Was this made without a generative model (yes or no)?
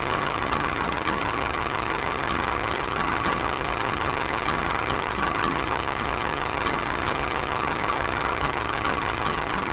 no